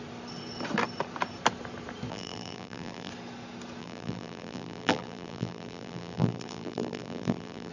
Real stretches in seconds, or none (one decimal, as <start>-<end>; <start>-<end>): 0.0-2.1; 3.1-3.8